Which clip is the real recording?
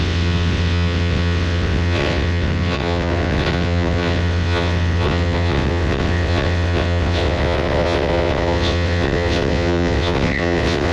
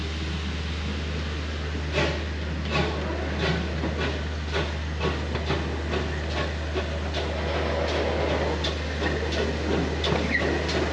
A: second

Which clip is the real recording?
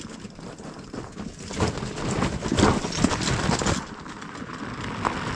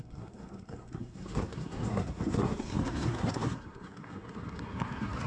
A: first